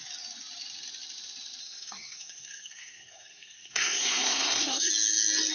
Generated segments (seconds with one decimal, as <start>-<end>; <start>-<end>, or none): 1.6-4.9